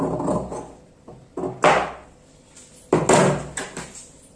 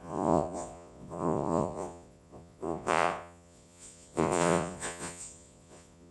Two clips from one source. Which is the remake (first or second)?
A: second